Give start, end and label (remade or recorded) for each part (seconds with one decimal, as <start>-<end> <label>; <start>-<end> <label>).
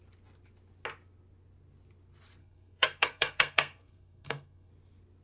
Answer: 0.0-2.4 recorded; 2.4-4.7 remade; 4.7-5.2 recorded